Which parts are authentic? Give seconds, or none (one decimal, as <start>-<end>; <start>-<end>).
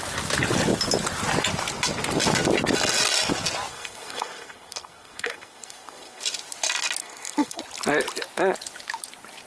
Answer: 0.0-3.7; 6.2-7.0; 7.6-9.5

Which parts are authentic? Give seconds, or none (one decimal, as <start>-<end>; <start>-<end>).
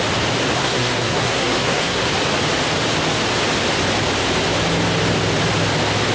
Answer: 0.0-0.6; 2.1-6.1